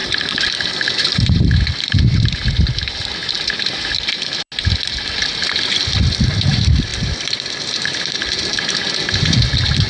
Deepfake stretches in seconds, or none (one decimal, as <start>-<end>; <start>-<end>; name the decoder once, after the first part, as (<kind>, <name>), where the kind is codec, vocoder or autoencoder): none

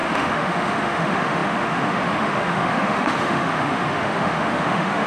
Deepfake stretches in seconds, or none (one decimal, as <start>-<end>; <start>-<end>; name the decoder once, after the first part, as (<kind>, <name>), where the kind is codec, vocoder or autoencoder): 0.0-5.1 (autoencoder, DAC-VAE)

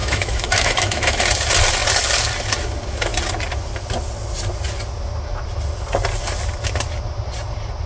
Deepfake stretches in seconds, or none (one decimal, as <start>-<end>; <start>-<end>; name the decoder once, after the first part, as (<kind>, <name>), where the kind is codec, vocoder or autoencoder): 0.0-1.2 (autoencoder, DAC-VAE)

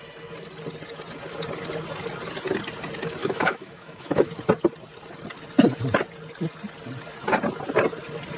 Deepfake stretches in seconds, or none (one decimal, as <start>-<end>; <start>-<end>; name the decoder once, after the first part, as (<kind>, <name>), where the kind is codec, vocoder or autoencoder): 3.2-4.3 (autoencoder, DAC-VAE)

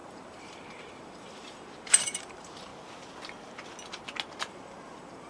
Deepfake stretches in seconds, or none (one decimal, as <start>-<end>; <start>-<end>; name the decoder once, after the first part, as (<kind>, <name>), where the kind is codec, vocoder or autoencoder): 0.0-2.7 (vocoder, BigVGAN v2); 4.5-5.3

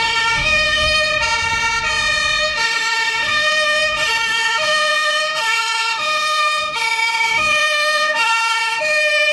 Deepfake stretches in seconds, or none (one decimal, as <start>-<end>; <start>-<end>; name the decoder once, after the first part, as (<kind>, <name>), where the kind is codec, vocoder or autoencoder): 0.0-1.1 (autoencoder, DAC-VAE); 2.4-9.3

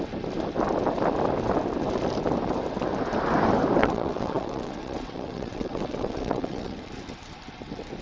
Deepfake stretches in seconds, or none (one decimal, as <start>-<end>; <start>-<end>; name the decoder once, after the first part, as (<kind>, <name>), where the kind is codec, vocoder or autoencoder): 3.8-6.8 (vocoder, WaveNeXt)